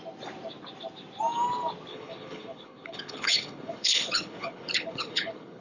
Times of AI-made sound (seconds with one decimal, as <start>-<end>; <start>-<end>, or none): 1.9-5.6